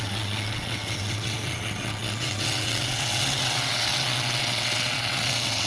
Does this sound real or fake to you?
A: fake